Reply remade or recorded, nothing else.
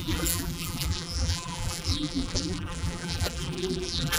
remade